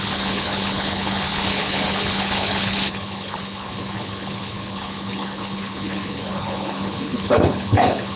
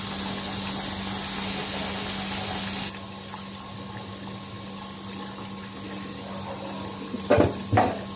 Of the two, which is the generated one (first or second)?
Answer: first